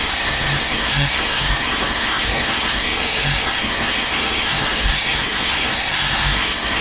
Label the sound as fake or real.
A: fake